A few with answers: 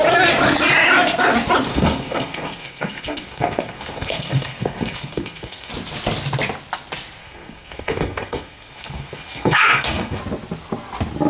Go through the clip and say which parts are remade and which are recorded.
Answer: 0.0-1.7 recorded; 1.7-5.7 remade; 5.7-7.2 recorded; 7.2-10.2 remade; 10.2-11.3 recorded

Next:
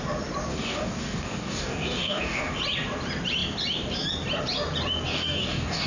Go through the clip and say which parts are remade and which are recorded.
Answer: 0.0-0.5 recorded; 0.5-2.6 remade; 2.6-5.1 recorded; 5.1-5.9 remade

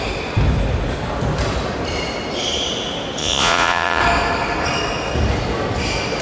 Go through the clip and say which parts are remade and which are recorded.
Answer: 0.0-3.2 recorded; 3.2-4.0 remade; 4.0-6.2 recorded

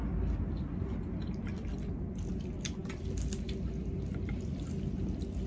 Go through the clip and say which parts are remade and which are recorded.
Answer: 0.0-5.5 recorded

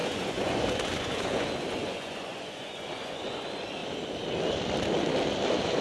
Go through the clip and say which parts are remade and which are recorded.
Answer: 0.0-3.8 remade; 3.8-5.8 recorded